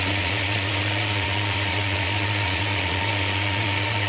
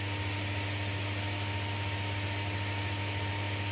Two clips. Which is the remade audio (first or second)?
first